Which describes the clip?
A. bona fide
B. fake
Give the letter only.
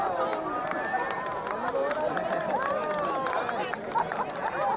A